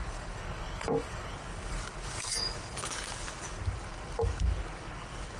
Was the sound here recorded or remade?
remade